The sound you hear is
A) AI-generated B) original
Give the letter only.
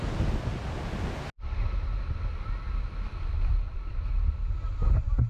B